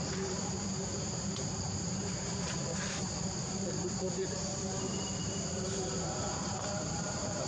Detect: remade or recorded remade